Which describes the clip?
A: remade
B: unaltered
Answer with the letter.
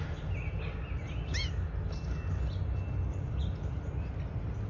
B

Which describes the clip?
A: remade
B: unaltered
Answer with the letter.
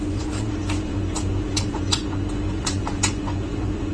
A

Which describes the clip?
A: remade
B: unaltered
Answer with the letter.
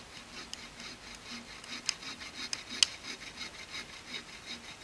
B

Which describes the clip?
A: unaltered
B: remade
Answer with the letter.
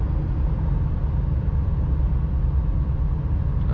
A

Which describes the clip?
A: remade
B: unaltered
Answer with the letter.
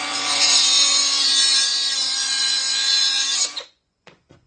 A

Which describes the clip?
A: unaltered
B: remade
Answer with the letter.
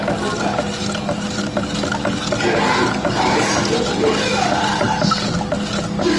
A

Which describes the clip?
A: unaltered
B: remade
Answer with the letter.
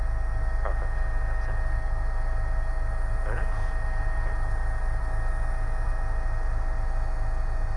A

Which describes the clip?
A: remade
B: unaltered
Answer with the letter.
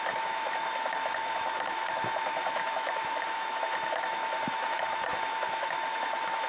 A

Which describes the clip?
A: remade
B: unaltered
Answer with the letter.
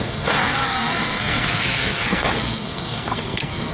A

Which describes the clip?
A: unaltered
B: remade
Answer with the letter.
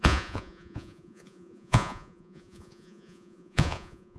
B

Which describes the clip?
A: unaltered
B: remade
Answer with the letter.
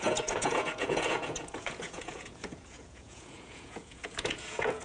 B